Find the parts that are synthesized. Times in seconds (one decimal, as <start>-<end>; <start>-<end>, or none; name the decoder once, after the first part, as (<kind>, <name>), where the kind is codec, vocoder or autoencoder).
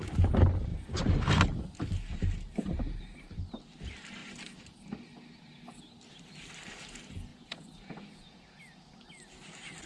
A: 7.3-8.6 (vocoder, Vocos)